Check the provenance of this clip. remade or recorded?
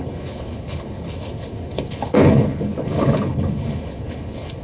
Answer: remade